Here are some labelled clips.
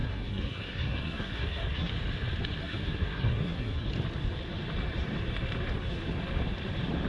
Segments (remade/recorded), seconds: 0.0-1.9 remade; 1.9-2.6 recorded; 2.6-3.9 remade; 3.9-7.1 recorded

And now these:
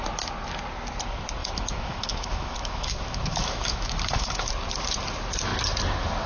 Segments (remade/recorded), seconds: 0.0-1.4 recorded; 1.4-4.5 remade; 4.5-6.3 recorded

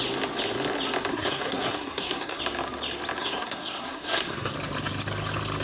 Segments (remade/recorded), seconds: 0.0-1.1 recorded; 1.1-2.4 remade; 2.4-3.2 recorded; 3.2-4.5 remade; 4.5-5.6 recorded